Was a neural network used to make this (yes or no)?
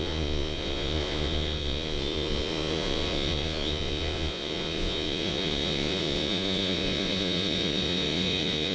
yes